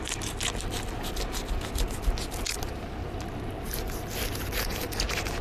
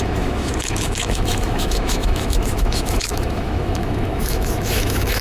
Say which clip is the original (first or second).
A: first